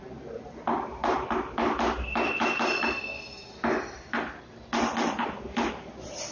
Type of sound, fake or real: real